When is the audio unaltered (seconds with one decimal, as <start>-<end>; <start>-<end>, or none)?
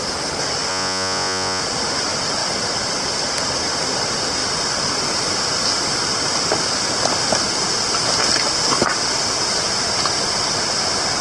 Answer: 0.0-0.7; 1.6-11.2